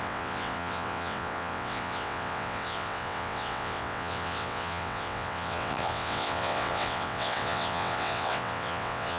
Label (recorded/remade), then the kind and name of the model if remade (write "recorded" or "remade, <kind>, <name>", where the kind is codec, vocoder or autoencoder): remade, vocoder, WaveNeXt